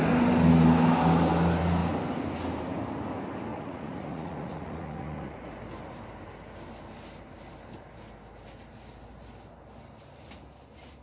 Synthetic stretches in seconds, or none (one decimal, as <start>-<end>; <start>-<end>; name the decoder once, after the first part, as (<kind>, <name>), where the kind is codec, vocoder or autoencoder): 3.5-5.6 (vocoder, Vocos)